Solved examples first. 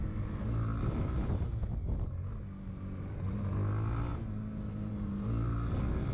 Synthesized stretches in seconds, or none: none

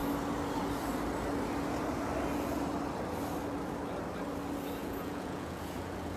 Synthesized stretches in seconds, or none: 4.8-6.2 (vocoder, Vocos)

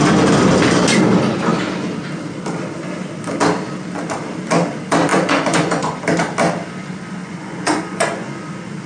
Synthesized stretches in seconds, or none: 5.1-6.0 (vocoder, Vocos); 7.2-8.5

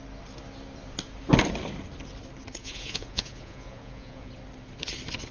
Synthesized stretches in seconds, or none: 2.6-4.3 (vocoder, Vocos)

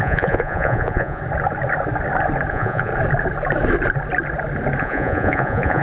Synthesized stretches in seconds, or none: 0.0-1.2 (vocoder, Vocos); 2.5-2.9; 4.8-5.8

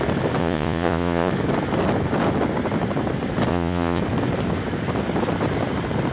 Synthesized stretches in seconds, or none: 0.4-1.3 (vocoder, Vocos); 3.5-4.0